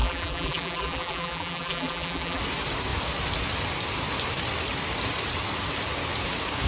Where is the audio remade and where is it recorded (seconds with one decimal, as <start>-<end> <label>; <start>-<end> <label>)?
0.0-2.4 remade; 2.4-6.7 recorded